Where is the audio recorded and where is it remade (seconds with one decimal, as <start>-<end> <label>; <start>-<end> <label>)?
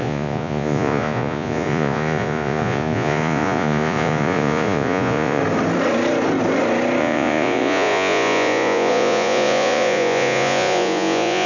0.0-5.4 remade; 5.4-7.0 recorded; 7.0-11.5 remade